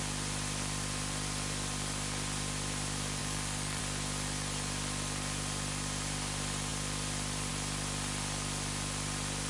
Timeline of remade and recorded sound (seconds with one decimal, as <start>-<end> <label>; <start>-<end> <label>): 0.0-3.2 recorded; 3.2-3.8 remade; 3.8-9.5 recorded

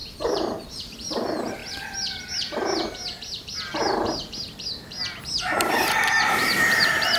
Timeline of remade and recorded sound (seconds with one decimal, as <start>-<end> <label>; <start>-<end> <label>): 0.0-1.6 remade; 1.6-5.2 recorded; 5.2-7.2 remade

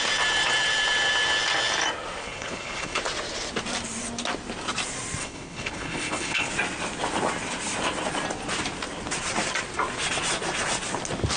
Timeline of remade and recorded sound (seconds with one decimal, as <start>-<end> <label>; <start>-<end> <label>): 0.0-2.2 recorded; 2.2-3.0 remade; 3.0-5.2 recorded; 5.2-6.5 remade; 6.5-11.4 recorded

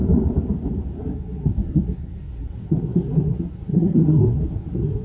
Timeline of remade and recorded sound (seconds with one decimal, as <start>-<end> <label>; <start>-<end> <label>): 0.0-1.0 recorded; 1.0-5.0 remade

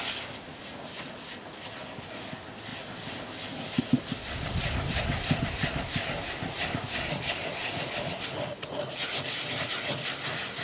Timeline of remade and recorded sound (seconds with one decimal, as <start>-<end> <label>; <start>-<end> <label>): 0.0-10.6 recorded